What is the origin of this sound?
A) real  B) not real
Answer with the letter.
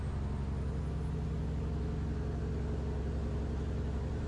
A